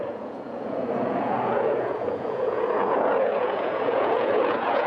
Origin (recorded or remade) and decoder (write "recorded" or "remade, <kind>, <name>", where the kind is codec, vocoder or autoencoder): remade, vocoder, Vocos